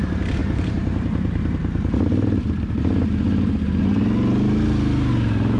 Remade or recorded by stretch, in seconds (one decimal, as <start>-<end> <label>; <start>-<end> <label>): 0.0-0.4 recorded; 0.4-3.8 remade; 3.8-5.6 recorded